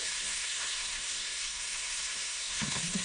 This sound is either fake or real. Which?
fake